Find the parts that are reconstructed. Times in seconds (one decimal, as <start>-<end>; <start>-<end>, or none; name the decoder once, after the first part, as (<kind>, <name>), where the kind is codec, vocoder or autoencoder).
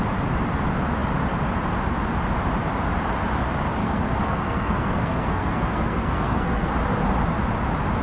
3.8-6.7 (codec, SNAC)